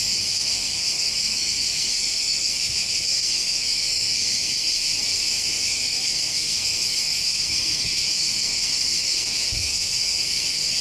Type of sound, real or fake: fake